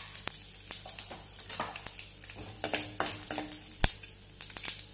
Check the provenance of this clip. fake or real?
real